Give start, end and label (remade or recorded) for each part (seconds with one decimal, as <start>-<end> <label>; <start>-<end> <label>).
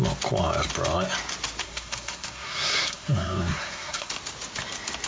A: 0.0-1.6 recorded; 1.6-4.1 remade; 4.1-5.1 recorded